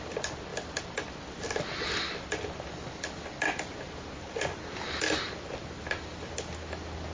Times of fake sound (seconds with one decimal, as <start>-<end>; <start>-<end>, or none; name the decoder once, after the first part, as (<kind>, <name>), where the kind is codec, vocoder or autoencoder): none